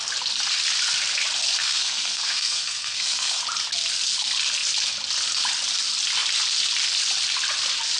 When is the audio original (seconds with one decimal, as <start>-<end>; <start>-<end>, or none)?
0.0-1.6; 3.4-8.0